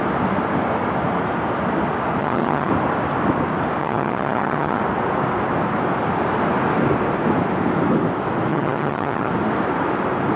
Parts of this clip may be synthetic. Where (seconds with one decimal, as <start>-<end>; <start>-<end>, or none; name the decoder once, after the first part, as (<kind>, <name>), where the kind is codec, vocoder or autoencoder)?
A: 2.2-2.7 (vocoder, HiFi-GAN); 3.8-4.8; 8.5-9.3